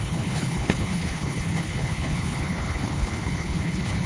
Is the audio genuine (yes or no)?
no